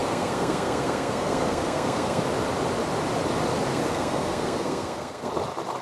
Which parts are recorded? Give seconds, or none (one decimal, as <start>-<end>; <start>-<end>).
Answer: 2.2-3.7; 5.3-5.8

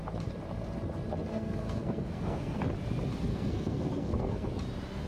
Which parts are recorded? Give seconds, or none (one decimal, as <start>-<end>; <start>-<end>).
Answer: 0.0-1.3; 2.6-3.3; 4.5-5.1

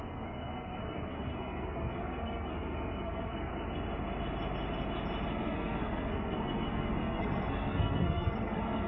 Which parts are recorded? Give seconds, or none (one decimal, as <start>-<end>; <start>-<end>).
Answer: 3.5-5.3

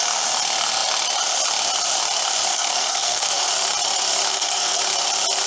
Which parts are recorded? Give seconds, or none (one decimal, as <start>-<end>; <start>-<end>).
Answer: 0.0-2.5; 3.5-4.3; 4.8-5.5